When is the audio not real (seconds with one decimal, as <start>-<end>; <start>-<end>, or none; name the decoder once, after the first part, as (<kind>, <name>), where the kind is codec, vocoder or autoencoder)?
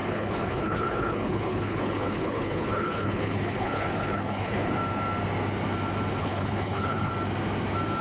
0.0-4.8 (codec, HILCodec); 6.2-7.1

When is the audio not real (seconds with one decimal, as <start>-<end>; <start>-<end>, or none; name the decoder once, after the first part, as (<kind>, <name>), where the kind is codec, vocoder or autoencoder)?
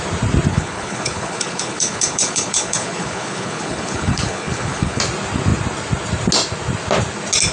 0.5-5.0 (codec, HILCodec)